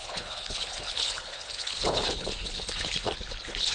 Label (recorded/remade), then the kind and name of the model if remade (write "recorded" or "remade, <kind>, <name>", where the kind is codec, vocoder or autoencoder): remade, codec, HILCodec